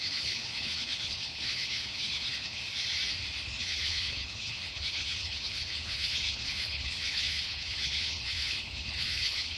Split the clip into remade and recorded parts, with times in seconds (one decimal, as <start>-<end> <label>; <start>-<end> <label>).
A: 0.0-2.6 remade; 2.6-3.6 recorded; 3.6-9.6 remade